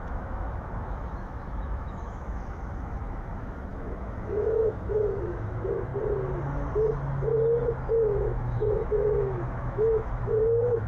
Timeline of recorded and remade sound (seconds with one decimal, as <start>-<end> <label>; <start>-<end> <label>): 0.0-5.9 remade; 5.9-7.9 recorded; 7.9-10.9 remade